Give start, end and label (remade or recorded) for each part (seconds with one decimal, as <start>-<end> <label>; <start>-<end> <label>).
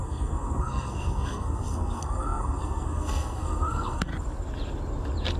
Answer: 0.0-4.1 remade; 4.1-5.4 recorded